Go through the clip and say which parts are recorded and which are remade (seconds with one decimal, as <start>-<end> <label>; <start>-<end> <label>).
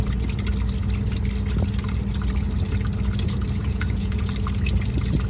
0.0-3.6 recorded; 3.6-4.3 remade; 4.3-5.3 recorded